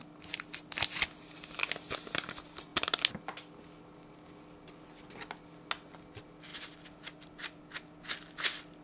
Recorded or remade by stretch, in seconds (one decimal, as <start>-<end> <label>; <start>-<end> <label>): 0.0-8.8 recorded